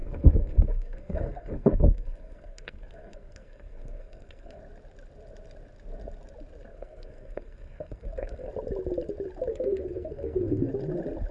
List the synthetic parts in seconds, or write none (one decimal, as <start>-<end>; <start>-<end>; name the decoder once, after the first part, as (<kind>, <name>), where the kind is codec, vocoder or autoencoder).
0.0-4.6 (codec, SNAC); 6.7-8.5; 9.5-10.7